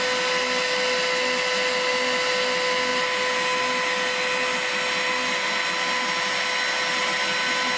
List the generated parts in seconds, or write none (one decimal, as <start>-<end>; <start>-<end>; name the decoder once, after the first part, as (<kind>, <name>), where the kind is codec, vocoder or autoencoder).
none